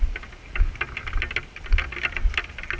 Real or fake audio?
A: real